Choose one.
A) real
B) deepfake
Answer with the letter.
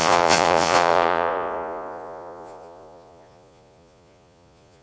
B